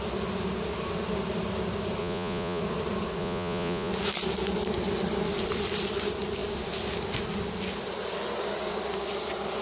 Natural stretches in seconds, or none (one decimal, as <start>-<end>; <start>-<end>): 0.0-2.0; 2.6-3.2; 3.9-9.6